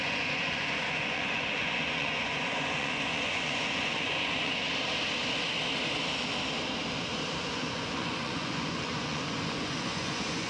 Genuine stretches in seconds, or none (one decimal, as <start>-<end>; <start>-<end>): 4.6-7.4